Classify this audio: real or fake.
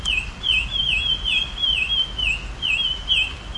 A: real